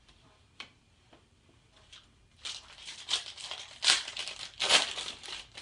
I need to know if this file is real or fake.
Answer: fake